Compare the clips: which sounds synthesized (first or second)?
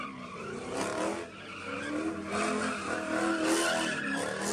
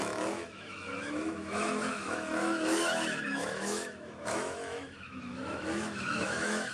second